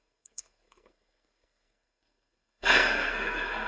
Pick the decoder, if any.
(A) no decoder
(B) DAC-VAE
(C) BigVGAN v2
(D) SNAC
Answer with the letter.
D